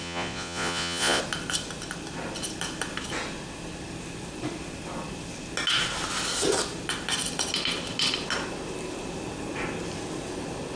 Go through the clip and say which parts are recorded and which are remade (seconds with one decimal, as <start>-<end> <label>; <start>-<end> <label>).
0.0-1.2 remade; 1.2-10.8 recorded